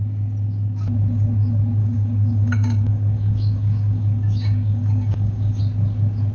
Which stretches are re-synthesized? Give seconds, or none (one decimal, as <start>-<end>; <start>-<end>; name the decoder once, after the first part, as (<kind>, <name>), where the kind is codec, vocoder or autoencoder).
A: 1.8-5.6 (codec, DAC)